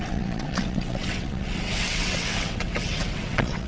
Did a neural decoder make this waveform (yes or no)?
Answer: yes